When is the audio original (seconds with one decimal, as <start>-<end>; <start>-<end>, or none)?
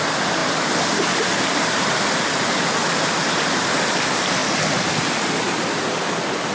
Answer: 0.0-6.5